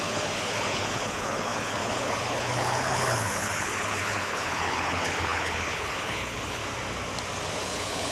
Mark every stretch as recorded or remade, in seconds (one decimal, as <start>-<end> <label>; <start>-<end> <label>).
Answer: 0.0-6.6 remade; 6.6-7.6 recorded; 7.6-8.1 remade